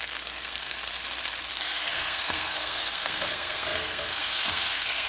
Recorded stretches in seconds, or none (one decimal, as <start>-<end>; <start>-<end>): 0.9-1.5